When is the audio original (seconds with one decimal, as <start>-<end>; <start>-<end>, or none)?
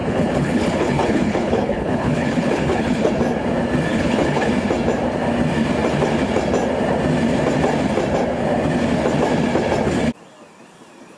3.1-3.9; 4.5-11.2